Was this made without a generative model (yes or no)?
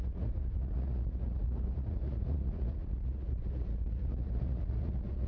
no